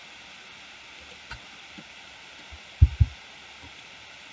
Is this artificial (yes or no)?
no